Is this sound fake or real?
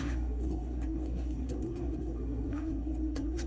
fake